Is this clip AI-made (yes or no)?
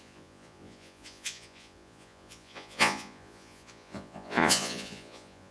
yes